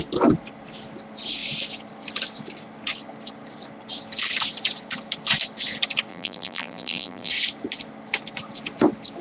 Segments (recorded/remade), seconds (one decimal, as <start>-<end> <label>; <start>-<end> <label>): 0.0-6.1 recorded; 6.1-7.3 remade; 7.3-9.2 recorded